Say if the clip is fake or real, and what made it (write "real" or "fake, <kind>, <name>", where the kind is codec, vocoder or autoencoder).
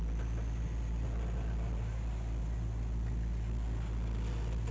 real